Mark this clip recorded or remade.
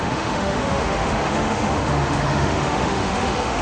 remade